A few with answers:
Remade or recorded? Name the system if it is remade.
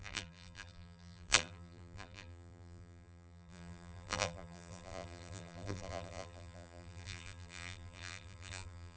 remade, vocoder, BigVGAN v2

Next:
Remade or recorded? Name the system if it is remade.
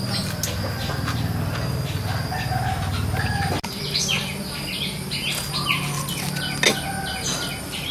recorded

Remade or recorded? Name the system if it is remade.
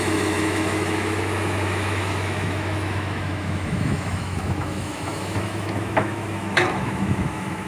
remade, autoencoder, DAC-VAE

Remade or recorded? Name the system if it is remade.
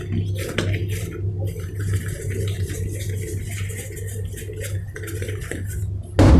recorded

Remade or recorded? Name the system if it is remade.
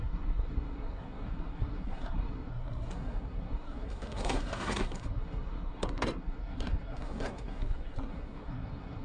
remade, codec, SNAC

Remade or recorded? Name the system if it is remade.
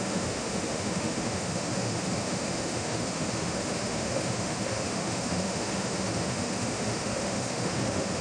remade, autoencoder, DAC-VAE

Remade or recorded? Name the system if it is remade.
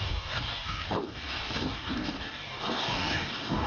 remade, codec, DAC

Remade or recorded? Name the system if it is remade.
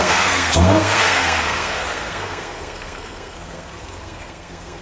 remade, codec, SNAC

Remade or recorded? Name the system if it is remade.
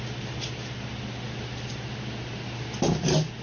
recorded